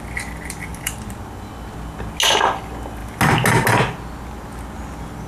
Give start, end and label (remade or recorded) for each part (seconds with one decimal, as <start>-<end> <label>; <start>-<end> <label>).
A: 0.0-0.7 recorded; 0.7-1.2 remade; 1.2-5.3 recorded